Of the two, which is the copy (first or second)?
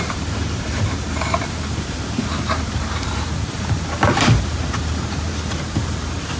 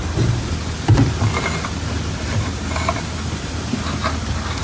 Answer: first